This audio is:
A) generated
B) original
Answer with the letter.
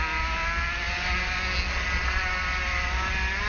B